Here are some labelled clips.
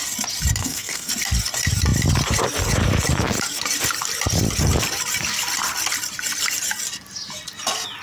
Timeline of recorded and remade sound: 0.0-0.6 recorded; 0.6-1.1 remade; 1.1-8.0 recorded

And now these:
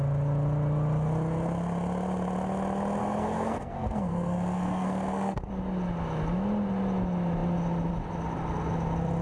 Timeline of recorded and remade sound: 0.0-3.0 recorded; 3.0-5.5 remade; 5.5-9.2 recorded

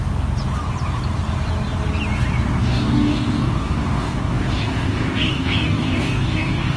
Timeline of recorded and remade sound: 0.0-2.6 recorded; 2.6-6.8 remade

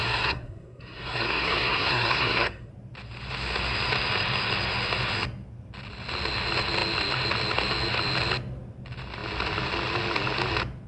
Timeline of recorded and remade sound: 0.0-2.7 remade; 2.7-10.9 recorded

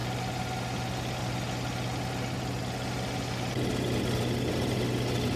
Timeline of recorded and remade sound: 0.0-5.4 recorded